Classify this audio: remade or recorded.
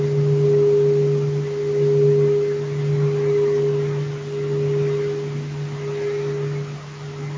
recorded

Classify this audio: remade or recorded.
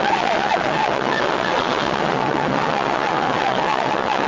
remade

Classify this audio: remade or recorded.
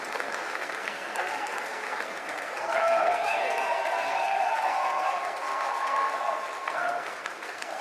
remade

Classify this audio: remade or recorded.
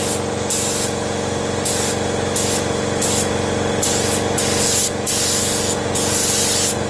recorded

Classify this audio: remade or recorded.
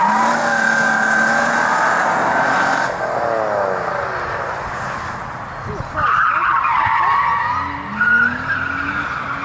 recorded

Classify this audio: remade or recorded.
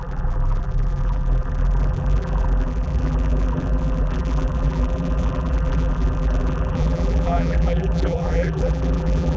remade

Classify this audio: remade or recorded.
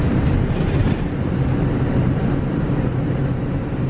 recorded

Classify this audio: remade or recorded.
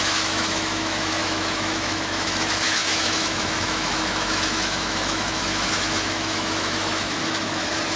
remade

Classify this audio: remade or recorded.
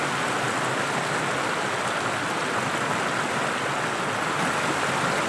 recorded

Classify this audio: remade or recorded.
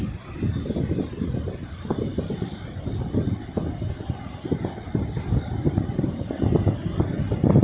recorded